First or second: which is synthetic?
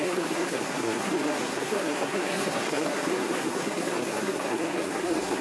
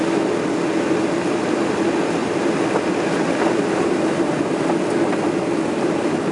first